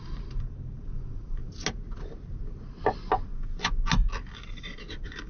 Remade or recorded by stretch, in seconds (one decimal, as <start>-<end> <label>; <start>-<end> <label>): 0.0-1.4 remade; 1.4-4.6 recorded; 4.6-5.3 remade